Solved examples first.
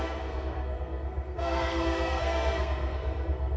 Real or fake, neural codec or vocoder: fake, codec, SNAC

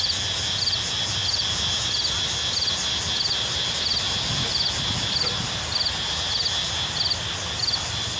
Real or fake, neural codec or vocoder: real